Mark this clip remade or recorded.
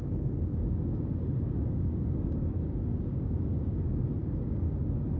remade